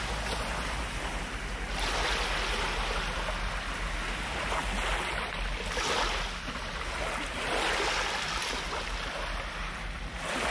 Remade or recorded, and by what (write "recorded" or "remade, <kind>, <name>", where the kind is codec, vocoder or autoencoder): recorded